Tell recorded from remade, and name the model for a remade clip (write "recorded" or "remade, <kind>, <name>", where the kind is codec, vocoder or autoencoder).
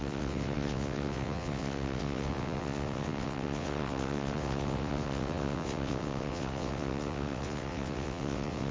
remade, vocoder, WaveNeXt